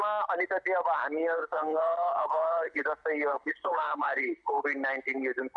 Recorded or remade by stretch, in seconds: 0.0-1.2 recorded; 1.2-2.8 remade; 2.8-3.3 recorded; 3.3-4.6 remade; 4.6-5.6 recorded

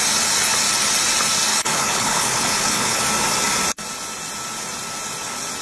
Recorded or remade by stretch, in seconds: 0.0-1.5 recorded; 1.5-3.0 remade; 3.0-5.6 recorded

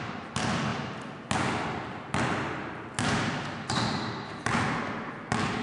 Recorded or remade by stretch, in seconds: 0.0-5.6 recorded

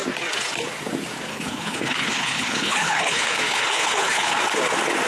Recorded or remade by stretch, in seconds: 0.0-1.3 recorded; 1.3-4.4 remade; 4.4-5.1 recorded

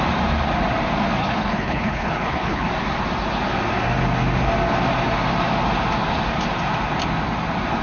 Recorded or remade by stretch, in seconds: 0.0-1.2 recorded; 1.2-2.7 remade; 2.7-7.8 recorded